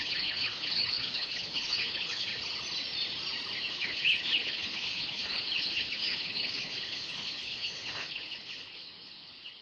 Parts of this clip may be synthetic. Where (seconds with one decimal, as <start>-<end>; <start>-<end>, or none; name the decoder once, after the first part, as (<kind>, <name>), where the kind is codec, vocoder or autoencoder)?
0.0-2.3 (codec, HILCodec); 3.7-9.6